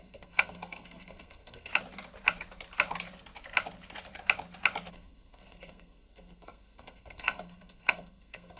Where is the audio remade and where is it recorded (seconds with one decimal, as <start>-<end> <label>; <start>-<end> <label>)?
0.0-1.7 remade; 1.7-4.9 recorded; 4.9-8.6 remade